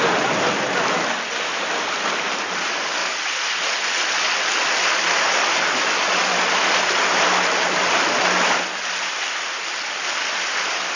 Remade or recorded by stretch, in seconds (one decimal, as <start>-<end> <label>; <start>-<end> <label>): 0.0-11.0 recorded